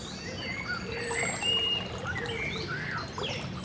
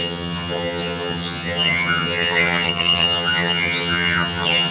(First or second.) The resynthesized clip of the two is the second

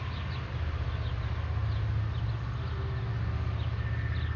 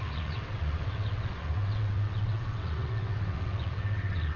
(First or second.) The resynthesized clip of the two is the second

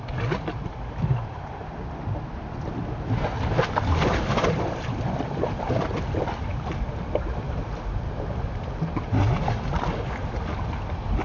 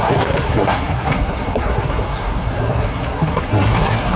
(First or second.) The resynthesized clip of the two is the second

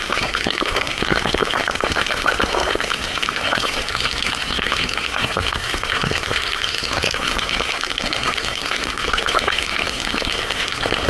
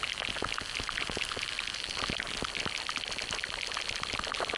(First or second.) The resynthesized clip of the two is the first